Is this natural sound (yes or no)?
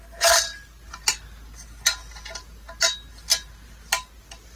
yes